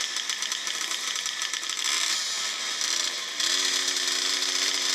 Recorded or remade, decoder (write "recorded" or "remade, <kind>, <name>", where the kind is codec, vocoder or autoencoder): recorded